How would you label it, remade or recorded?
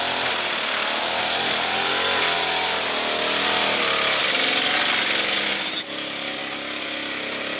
recorded